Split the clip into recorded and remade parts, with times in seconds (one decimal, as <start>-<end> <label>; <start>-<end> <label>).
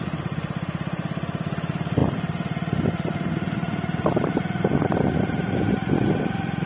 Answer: 0.0-6.7 recorded